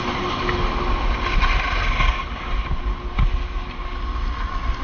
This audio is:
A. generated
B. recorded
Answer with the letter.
B